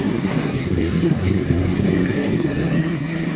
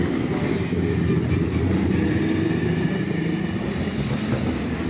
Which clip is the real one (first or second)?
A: second